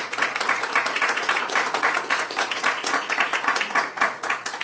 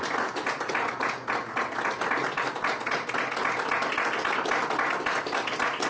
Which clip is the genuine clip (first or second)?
second